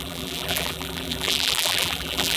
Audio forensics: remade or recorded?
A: remade